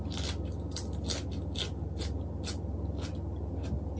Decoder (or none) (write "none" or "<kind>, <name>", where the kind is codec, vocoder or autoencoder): none